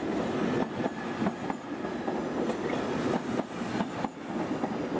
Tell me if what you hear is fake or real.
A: real